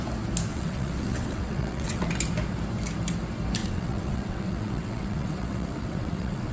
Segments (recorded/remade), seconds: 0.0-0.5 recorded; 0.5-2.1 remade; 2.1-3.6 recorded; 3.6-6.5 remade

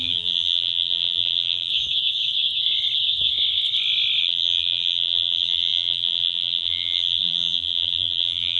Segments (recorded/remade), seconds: 0.0-1.7 remade; 1.7-4.2 recorded; 4.2-8.6 remade

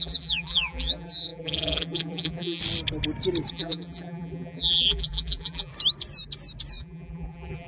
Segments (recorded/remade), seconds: 0.0-2.6 remade; 2.6-3.5 recorded; 3.5-5.7 remade; 5.7-6.7 recorded; 6.7-7.7 remade

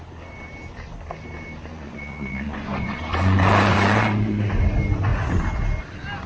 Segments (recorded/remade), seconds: 0.0-1.7 recorded; 1.7-4.6 remade; 4.6-6.3 recorded

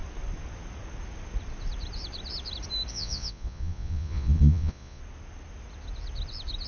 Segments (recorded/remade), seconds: 0.0-2.9 recorded; 2.9-5.0 remade; 5.0-6.7 recorded